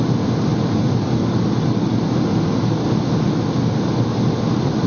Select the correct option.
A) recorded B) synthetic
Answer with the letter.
A